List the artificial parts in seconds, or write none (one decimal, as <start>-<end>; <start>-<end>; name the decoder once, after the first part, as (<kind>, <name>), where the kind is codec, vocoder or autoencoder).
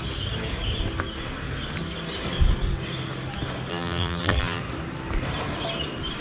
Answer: 3.7-4.6 (vocoder, BigVGAN v2)